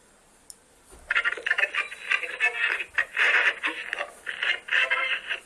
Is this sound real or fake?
fake